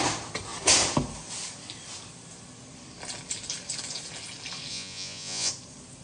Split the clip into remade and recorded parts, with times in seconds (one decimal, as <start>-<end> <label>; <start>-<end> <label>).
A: 0.0-4.7 recorded; 4.7-5.5 remade; 5.5-6.0 recorded